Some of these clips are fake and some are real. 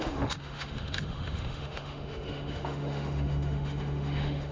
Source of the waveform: fake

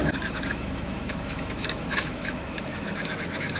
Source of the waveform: fake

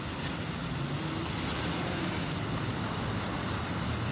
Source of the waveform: real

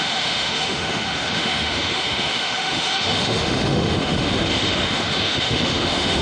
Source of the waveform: fake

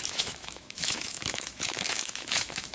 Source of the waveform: fake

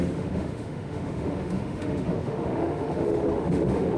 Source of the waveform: fake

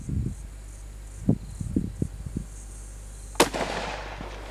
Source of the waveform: real